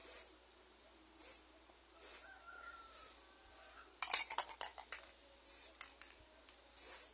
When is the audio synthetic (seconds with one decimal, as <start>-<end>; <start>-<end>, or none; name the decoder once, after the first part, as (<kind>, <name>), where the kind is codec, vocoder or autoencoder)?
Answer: none